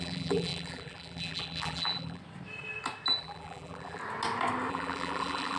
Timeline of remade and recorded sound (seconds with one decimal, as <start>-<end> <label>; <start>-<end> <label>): 0.0-2.2 remade; 2.2-3.2 recorded; 3.2-4.0 remade; 4.0-4.7 recorded; 4.7-5.6 remade

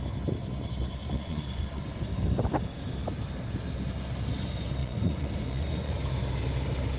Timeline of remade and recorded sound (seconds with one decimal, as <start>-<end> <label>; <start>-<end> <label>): 0.0-1.0 recorded; 1.0-1.8 remade; 1.8-4.8 recorded; 4.8-5.9 remade; 5.9-7.0 recorded

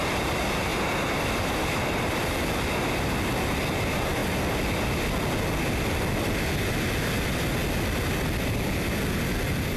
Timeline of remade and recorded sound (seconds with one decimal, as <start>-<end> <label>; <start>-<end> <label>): 0.0-9.8 recorded